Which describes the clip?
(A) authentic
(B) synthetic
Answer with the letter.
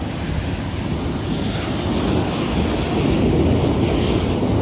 A